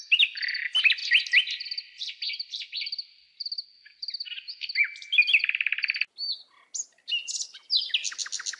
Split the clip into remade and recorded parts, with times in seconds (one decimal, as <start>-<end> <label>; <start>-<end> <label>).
0.0-8.6 recorded